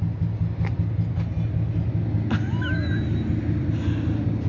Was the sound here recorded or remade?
recorded